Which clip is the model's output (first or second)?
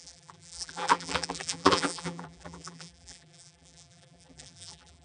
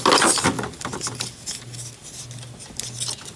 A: first